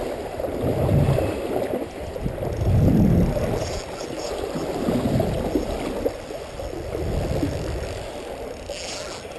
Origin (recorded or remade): recorded